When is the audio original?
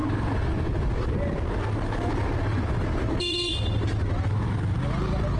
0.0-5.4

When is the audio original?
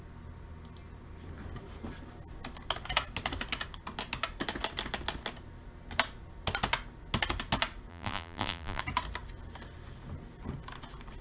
0.0-7.9; 8.8-11.2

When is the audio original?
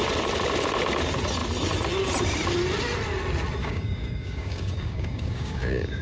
0.0-3.6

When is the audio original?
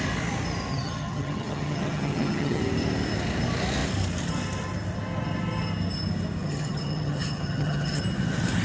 0.0-0.7; 2.6-6.4; 8.0-8.6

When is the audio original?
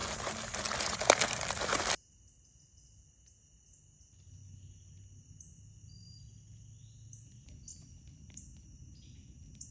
0.0-9.7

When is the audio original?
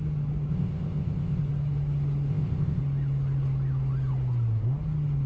0.0-0.5; 1.4-2.3; 2.8-5.3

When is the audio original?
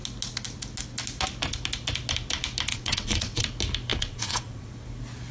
0.0-2.7; 3.4-3.9; 4.8-5.3